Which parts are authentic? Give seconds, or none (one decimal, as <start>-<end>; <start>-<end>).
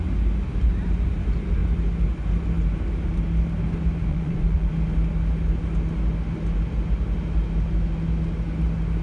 0.0-4.1; 4.7-9.0